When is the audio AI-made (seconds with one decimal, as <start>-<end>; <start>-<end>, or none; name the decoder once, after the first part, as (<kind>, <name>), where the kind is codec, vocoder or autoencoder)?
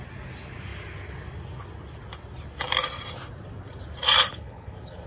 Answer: 4.2-5.1 (codec, HILCodec)